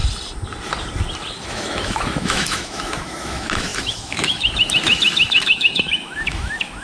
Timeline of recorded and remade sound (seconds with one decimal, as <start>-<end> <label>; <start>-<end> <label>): 0.0-1.4 recorded; 1.4-6.8 remade